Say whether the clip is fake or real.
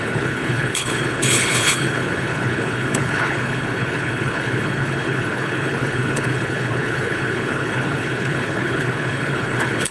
fake